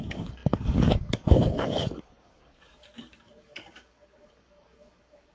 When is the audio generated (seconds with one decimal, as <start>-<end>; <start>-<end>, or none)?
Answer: 0.0-5.3